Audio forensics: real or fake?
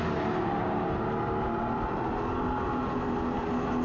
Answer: real